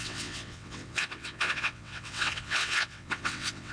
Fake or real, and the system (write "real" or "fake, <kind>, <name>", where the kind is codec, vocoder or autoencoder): fake, vocoder, WaveNeXt